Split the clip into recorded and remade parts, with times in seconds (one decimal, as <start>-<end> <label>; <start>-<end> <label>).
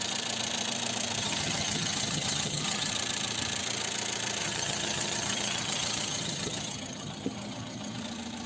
0.0-1.2 recorded; 1.2-2.9 remade; 2.9-4.4 recorded; 4.4-8.0 remade; 8.0-8.5 recorded